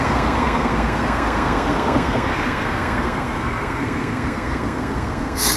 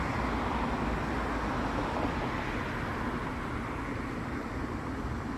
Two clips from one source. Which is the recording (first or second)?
second